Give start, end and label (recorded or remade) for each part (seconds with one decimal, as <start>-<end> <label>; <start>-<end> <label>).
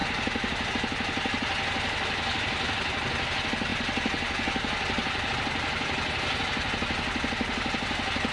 0.0-8.3 recorded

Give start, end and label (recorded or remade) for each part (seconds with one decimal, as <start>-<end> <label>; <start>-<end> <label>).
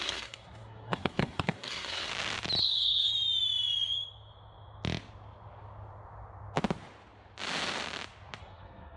0.0-2.1 remade; 2.1-2.6 recorded; 2.6-3.1 remade; 3.1-8.4 recorded; 8.4-9.0 remade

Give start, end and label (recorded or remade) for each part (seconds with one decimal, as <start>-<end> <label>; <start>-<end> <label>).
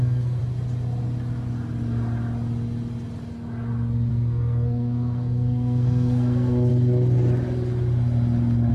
0.0-0.4 remade; 0.4-4.1 recorded; 4.1-6.7 remade; 6.7-8.7 recorded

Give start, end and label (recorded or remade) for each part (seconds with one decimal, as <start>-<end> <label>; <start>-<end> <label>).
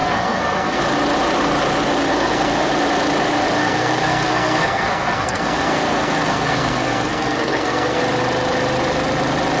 0.0-0.8 remade; 0.8-2.1 recorded; 2.1-2.7 remade; 2.7-3.6 recorded; 3.6-8.0 remade; 8.0-9.6 recorded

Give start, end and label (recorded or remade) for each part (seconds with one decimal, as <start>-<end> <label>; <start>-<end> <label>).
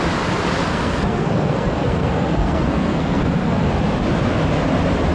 0.0-0.6 recorded; 0.6-3.7 remade; 3.7-5.1 recorded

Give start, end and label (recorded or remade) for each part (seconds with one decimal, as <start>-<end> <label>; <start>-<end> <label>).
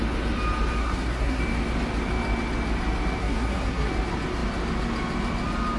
0.0-0.8 recorded; 0.8-1.4 remade; 1.4-3.2 recorded; 3.2-3.9 remade; 3.9-5.8 recorded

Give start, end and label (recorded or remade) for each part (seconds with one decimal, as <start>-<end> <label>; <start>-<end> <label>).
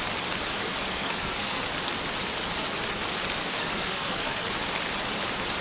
0.0-0.9 recorded; 0.9-1.6 remade; 1.6-3.4 recorded; 3.4-4.5 remade; 4.5-5.6 recorded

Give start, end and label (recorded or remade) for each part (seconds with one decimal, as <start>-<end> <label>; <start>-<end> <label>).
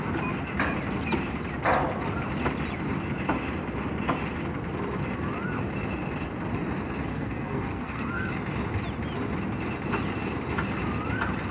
0.0-7.1 recorded; 7.1-8.3 remade; 8.3-11.5 recorded